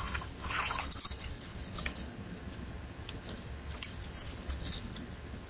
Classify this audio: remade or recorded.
remade